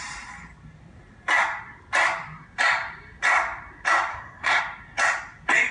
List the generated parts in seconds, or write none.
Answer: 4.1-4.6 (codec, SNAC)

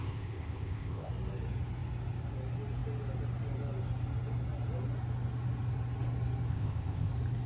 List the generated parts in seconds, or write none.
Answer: 0.0-1.1 (codec, ZipCodec); 6.5-7.1

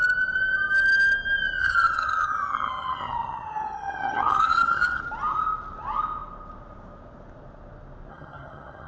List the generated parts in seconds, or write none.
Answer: 1.6-5.0 (vocoder, HiFi-GAN); 8.1-8.9

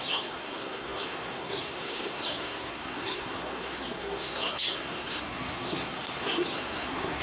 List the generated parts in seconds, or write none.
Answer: 0.0-7.2 (codec, SNAC)

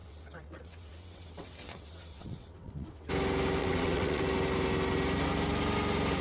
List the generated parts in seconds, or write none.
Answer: 0.0-3.1 (vocoder, WaveNeXt); 3.6-4.2